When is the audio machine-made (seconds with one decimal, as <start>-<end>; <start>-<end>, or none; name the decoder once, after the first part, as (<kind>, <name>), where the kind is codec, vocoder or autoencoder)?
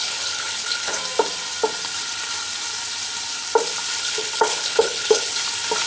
0.0-1.0 (codec, HILCodec); 4.0-5.3